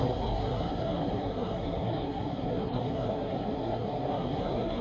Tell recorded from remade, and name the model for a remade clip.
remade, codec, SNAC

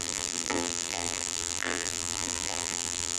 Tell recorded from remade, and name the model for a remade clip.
remade, vocoder, BigVGAN v2